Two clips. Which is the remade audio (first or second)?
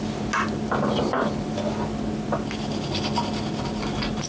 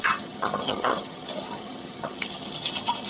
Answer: second